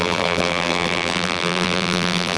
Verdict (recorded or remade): remade